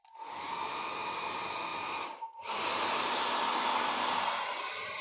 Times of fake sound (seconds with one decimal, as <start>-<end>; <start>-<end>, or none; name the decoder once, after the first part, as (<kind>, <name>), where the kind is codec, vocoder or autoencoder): none